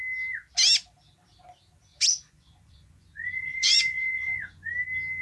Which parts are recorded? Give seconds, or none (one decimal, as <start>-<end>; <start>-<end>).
0.0-1.9; 4.7-5.2